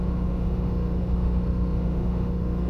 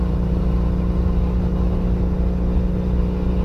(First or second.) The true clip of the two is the second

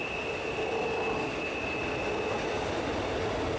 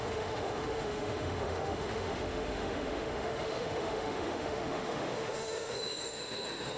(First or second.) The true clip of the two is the first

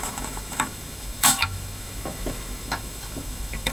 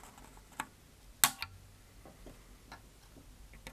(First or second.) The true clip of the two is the second